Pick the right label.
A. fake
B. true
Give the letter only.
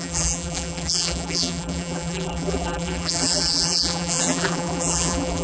A